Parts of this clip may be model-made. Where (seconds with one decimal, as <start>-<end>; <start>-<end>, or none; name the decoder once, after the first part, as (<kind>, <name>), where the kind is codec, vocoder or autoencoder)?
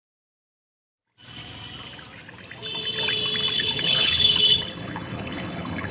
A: 3.5-5.9 (codec, HILCodec)